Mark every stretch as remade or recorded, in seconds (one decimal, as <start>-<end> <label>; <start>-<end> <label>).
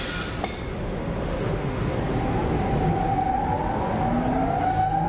0.0-0.7 recorded; 0.7-2.0 remade; 2.0-5.1 recorded